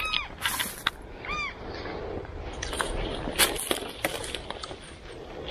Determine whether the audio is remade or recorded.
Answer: recorded